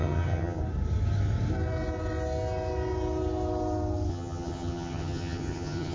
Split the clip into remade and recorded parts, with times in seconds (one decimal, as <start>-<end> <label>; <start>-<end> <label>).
0.0-0.6 remade; 0.6-4.1 recorded; 4.1-5.9 remade